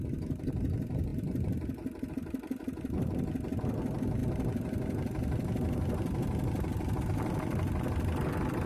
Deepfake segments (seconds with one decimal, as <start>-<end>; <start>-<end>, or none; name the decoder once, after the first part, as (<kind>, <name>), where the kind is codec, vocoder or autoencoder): none